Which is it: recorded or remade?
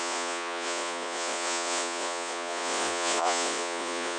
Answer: remade